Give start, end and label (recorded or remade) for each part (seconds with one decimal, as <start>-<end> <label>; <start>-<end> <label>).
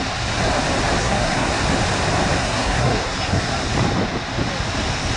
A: 0.0-1.0 recorded; 1.0-1.5 remade; 1.5-2.4 recorded; 2.4-3.4 remade; 3.4-5.2 recorded